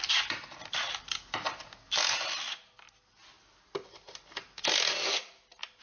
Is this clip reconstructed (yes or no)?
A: no